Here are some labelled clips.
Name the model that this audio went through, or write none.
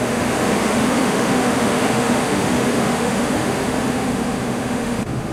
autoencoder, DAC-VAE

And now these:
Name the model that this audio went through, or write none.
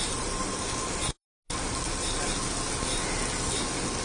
none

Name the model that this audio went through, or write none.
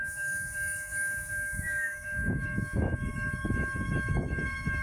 autoencoder, DAC-VAE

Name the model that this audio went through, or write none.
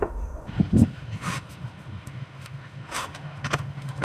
autoencoder, DAC-VAE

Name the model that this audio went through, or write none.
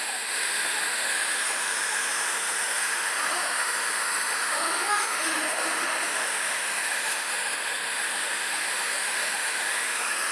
autoencoder, DAC-VAE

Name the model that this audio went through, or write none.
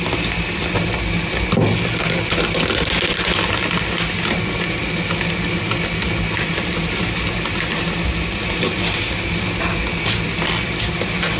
none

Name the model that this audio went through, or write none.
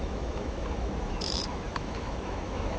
autoencoder, DAC-VAE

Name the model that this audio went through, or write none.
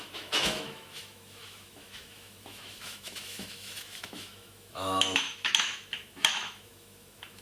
autoencoder, DAC-VAE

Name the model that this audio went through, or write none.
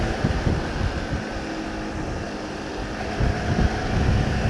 none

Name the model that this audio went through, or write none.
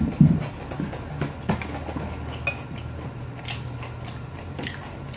none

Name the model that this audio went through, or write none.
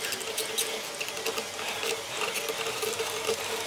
none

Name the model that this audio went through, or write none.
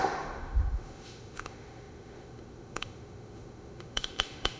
autoencoder, DAC-VAE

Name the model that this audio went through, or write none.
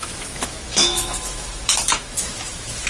autoencoder, DAC-VAE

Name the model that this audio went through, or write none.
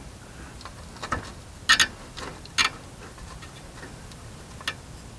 none